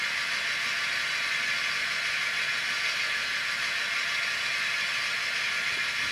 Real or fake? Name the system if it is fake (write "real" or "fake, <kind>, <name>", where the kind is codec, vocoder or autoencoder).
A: real